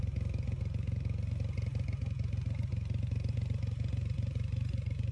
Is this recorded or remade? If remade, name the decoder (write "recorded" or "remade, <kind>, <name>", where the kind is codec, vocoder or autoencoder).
recorded